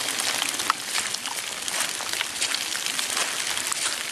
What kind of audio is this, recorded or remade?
recorded